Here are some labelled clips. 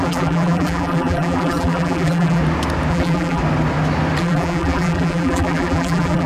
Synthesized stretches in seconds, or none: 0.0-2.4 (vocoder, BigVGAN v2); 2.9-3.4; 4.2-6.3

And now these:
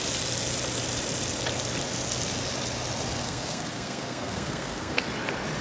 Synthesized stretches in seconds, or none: 3.2-5.0 (codec, SNAC)

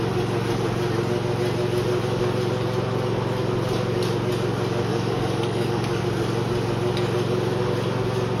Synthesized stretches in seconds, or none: 4.9-6.0 (codec, DAC)

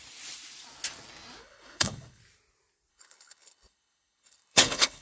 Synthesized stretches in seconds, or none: 1.4-2.2 (codec, HILCodec); 2.9-5.0